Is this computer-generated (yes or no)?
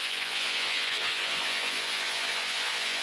yes